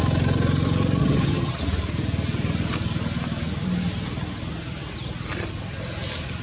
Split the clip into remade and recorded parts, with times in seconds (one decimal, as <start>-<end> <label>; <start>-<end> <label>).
0.0-1.0 recorded; 1.0-1.6 remade; 1.6-6.4 recorded